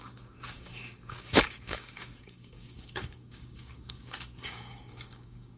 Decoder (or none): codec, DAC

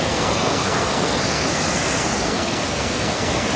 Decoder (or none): codec, SNAC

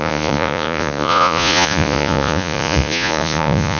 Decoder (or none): vocoder, Vocos